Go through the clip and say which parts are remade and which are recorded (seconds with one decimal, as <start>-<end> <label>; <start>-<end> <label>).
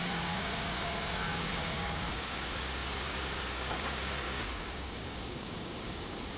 0.0-6.4 remade